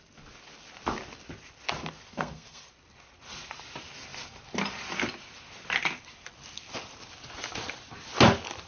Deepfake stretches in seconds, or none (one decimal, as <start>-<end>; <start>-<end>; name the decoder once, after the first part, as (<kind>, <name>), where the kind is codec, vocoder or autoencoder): 2.1-2.7 (codec, SNAC)